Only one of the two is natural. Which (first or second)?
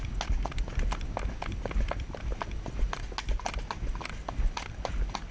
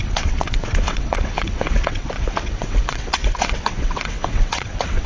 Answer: first